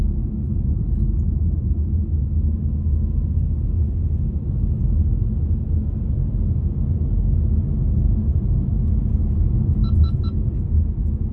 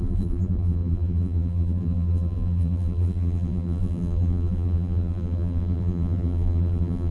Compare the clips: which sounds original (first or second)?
first